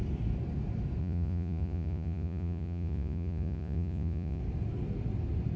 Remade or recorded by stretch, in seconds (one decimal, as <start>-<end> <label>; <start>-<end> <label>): 0.0-1.0 recorded; 1.0-4.4 remade; 4.4-5.6 recorded

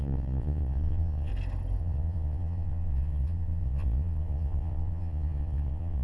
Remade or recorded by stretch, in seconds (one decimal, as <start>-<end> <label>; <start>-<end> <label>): 0.0-1.3 remade; 1.3-1.8 recorded; 1.8-6.0 remade

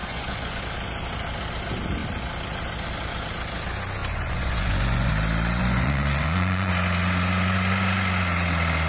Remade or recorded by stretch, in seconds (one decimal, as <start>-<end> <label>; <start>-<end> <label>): 0.0-0.6 remade; 0.6-4.0 recorded; 4.0-5.1 remade; 5.1-5.6 recorded; 5.6-6.7 remade; 6.7-8.9 recorded

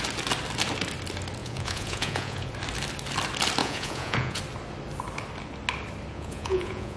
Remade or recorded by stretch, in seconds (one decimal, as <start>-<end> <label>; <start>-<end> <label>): 0.0-1.4 recorded; 1.4-2.5 remade; 2.5-3.6 recorded; 3.6-4.4 remade; 4.4-6.1 recorded; 6.1-7.0 remade

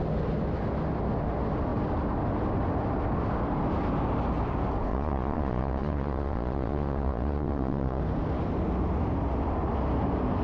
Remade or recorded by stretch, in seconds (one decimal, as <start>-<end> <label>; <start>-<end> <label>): 0.0-4.9 recorded; 4.9-8.0 remade; 8.0-10.4 recorded

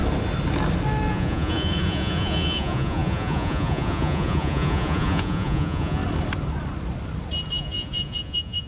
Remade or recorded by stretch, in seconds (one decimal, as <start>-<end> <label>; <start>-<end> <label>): 0.0-1.1 recorded; 1.1-6.0 remade; 6.0-7.5 recorded; 7.5-8.7 remade

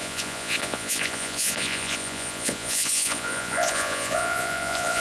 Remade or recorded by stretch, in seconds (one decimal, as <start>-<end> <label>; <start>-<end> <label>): 0.0-5.0 remade